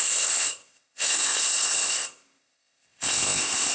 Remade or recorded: remade